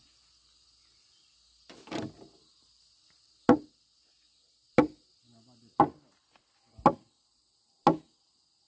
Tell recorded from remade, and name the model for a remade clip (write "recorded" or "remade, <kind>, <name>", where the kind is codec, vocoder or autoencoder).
recorded